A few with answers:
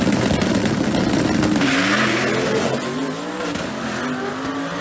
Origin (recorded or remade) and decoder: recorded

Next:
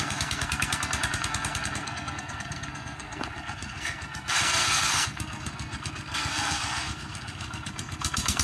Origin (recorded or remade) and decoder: remade, codec, SNAC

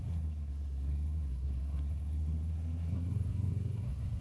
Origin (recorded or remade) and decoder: remade, codec, SNAC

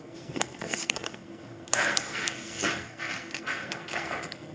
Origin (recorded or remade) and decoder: remade, codec, SNAC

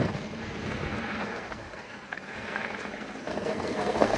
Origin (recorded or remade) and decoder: remade, codec, SNAC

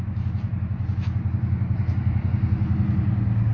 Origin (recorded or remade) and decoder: recorded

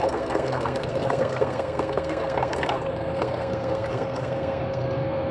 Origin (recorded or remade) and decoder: remade, codec, SNAC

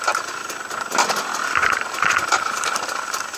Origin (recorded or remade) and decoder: recorded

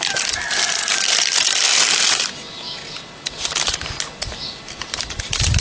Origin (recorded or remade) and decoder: recorded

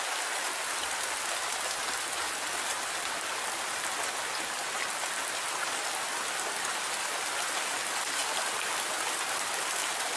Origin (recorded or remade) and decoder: recorded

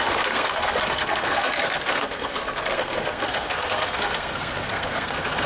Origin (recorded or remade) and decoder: remade, codec, SNAC